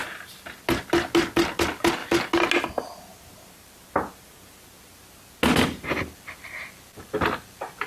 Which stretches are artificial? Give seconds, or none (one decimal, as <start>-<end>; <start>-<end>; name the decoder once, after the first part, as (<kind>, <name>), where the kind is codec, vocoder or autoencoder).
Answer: none